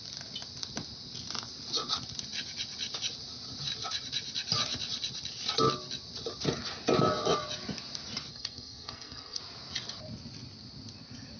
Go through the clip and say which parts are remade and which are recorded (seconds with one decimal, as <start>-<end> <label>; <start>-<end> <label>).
0.0-8.3 recorded; 8.3-9.4 remade; 9.4-11.4 recorded